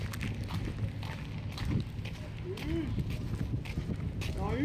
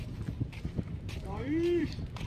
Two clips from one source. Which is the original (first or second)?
first